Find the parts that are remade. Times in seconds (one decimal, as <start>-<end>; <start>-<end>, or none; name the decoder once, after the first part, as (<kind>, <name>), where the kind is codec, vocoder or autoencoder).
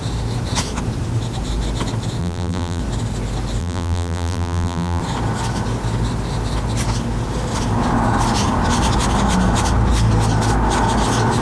2.2-2.8 (vocoder, BigVGAN v2); 3.6-5.0